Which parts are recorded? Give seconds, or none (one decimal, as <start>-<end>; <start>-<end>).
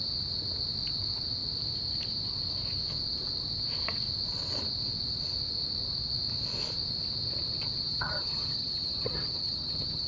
0.0-7.9